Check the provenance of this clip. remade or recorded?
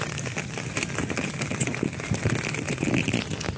recorded